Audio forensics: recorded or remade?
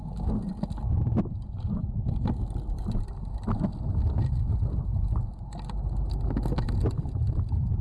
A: recorded